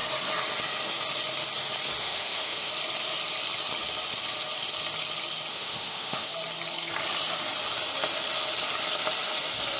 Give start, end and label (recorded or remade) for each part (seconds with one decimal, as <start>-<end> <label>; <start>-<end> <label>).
0.0-2.0 recorded; 2.0-2.7 remade; 2.7-5.5 recorded; 5.5-6.3 remade; 6.3-9.8 recorded